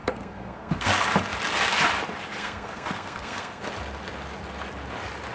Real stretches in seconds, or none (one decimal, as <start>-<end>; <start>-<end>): 0.9-2.4; 3.6-5.3

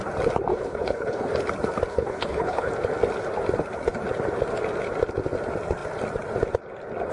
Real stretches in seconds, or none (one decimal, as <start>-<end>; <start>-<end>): 0.0-0.5; 1.3-1.9; 2.7-7.1

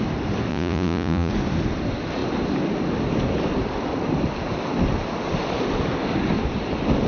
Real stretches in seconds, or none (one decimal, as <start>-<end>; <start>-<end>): 0.0-0.5; 1.3-7.1

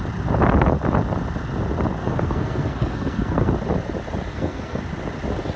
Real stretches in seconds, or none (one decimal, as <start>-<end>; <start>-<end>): 0.0-2.0; 3.5-4.3; 4.8-5.6

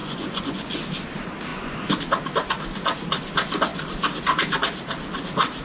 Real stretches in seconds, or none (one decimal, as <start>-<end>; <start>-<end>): 0.8-1.5; 2.0-5.6

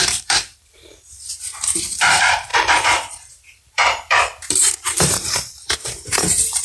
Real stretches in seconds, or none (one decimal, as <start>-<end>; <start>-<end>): none

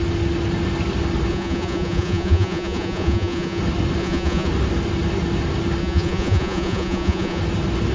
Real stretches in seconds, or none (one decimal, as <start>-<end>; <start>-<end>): 0.0-1.3; 3.6-4.0; 4.5-5.8; 7.4-7.9

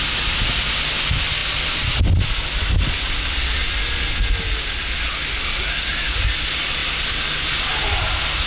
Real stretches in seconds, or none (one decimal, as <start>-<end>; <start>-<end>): 0.0-8.5